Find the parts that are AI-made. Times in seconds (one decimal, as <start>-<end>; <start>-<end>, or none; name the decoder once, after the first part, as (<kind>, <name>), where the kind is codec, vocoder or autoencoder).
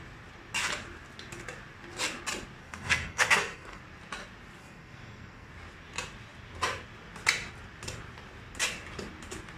2.6-3.8 (codec, SNAC); 4.6-5.5